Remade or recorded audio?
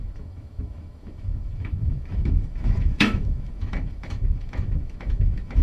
remade